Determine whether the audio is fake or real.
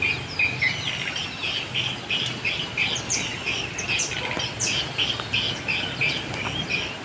real